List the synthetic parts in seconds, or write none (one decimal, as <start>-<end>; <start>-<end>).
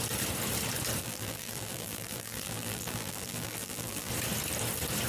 1.0-4.1